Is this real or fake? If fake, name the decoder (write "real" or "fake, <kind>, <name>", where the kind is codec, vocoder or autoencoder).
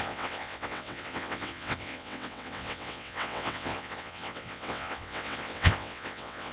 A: fake, vocoder, WaveNeXt